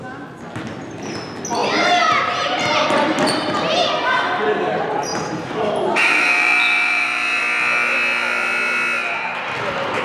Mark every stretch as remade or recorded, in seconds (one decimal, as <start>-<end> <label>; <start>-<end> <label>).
0.0-5.1 recorded; 5.1-7.4 remade; 7.4-10.0 recorded